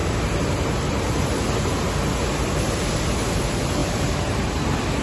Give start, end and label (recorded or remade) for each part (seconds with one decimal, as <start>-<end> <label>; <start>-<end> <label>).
0.0-5.0 recorded